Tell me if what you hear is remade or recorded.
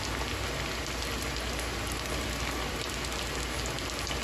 recorded